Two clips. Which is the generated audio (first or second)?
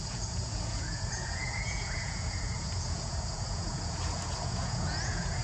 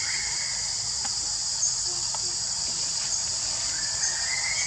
first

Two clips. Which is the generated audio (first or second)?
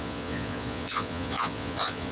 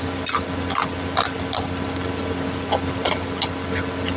first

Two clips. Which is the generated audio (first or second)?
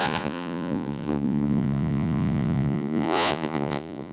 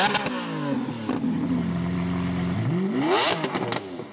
first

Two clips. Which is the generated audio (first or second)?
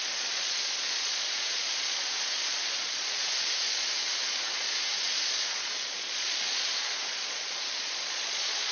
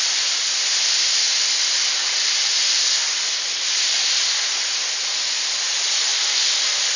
first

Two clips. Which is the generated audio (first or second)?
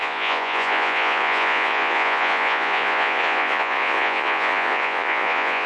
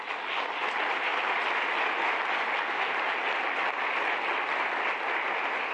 first